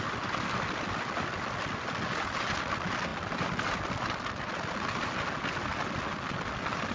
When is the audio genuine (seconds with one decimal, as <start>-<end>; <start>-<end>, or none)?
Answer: 0.0-6.9